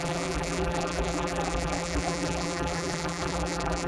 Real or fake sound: fake